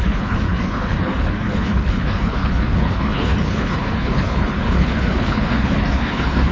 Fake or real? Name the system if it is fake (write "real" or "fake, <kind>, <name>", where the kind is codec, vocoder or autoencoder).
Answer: fake, codec, HILCodec